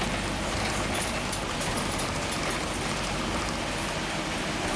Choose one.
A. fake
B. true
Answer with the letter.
B